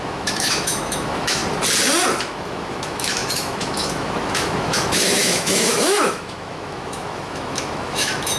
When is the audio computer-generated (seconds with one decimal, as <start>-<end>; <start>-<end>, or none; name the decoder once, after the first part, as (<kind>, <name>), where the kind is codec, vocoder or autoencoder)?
0.0-1.4 (autoencoder, DAC-VAE); 2.2-8.4